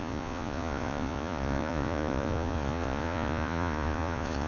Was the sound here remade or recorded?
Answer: remade